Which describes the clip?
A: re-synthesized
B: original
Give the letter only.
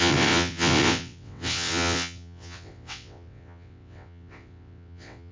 A